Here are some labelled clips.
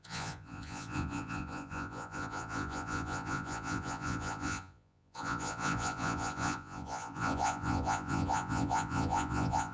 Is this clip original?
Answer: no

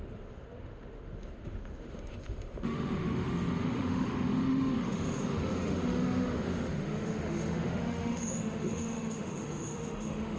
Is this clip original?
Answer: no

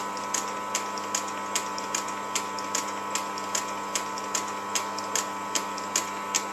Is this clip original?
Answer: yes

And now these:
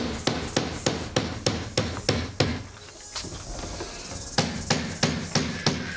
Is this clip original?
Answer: yes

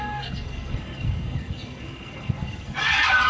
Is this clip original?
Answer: no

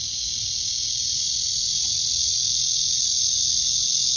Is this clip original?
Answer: yes